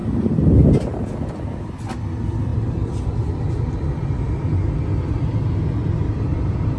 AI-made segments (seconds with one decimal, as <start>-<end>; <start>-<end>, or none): none

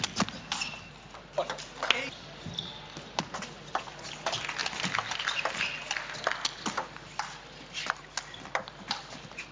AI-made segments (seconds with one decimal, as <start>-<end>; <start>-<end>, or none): none

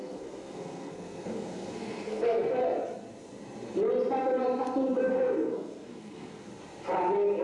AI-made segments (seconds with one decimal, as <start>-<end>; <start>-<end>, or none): 0.0-2.6; 5.1-6.5

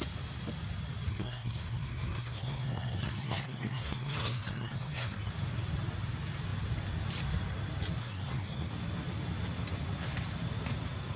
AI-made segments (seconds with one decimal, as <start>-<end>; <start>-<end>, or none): 1.1-5.3; 8.0-8.7

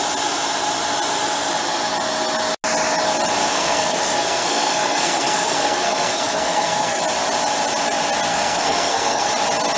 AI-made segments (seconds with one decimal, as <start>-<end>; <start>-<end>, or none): 3.5-7.0; 8.3-9.3

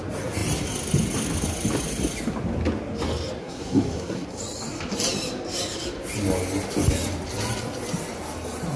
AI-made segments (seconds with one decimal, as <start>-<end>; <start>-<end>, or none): 3.4-4.4

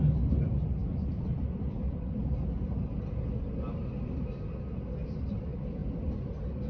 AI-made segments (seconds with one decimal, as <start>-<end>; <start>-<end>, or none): none

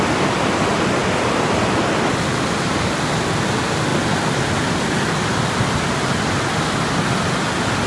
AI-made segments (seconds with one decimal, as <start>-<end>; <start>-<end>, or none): none